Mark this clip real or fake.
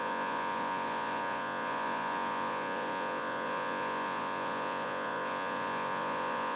fake